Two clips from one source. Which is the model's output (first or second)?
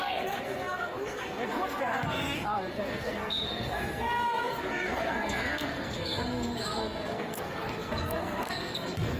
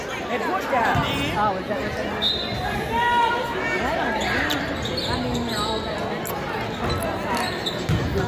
first